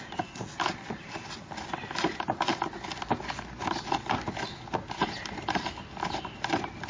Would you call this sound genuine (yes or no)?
yes